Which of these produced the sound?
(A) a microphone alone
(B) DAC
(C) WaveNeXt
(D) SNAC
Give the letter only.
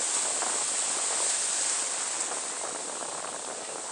A